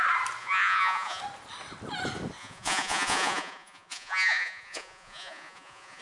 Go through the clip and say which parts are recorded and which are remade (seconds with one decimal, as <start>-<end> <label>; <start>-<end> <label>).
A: 0.0-0.4 recorded; 0.4-1.2 remade; 1.2-2.4 recorded; 2.4-6.0 remade